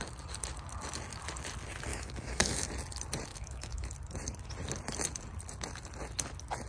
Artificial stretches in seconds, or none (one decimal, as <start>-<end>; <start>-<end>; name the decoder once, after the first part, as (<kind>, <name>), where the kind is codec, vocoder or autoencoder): 1.9-2.7 (autoencoder, DAC-VAE); 3.3-3.9